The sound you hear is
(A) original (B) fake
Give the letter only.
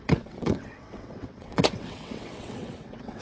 B